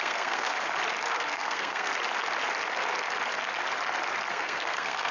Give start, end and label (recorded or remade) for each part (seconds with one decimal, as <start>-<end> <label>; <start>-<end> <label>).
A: 0.0-0.5 remade; 0.5-1.1 recorded; 1.1-1.9 remade; 1.9-4.3 recorded; 4.3-5.1 remade